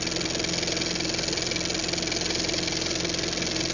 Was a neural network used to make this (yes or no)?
no